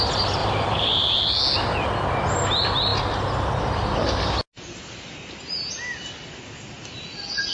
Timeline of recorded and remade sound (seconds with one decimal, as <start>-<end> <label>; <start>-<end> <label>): 0.0-0.4 recorded; 0.4-1.4 remade; 1.4-7.5 recorded